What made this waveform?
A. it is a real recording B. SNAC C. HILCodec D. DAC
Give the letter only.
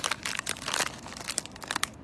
A